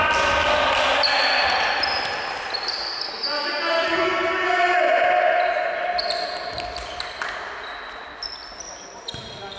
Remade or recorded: recorded